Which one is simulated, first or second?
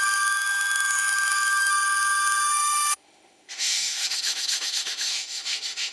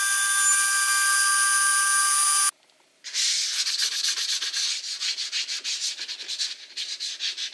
first